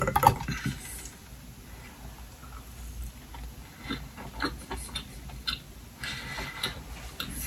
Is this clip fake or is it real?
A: real